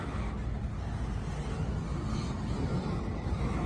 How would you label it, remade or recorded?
recorded